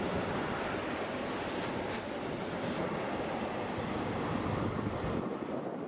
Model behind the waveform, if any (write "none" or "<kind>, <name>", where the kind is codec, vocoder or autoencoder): none